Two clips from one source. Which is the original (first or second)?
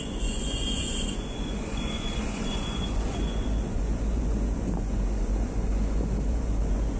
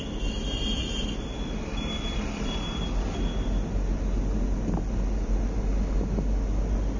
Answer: second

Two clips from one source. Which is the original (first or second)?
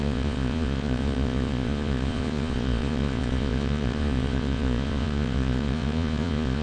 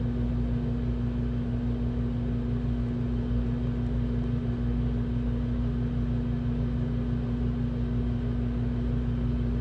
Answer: second